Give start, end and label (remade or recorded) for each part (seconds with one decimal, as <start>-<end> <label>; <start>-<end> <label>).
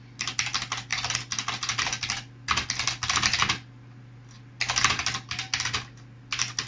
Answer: 0.0-6.7 recorded